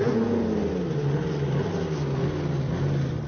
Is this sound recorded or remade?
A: recorded